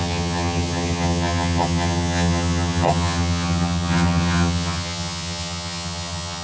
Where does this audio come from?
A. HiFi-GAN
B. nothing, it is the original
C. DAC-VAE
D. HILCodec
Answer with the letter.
A